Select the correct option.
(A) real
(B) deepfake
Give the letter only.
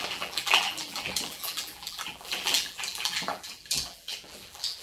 B